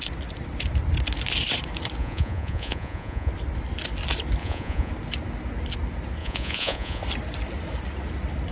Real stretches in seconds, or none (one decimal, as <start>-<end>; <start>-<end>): 0.0-2.0; 3.3-4.4; 4.9-6.2; 7.0-8.5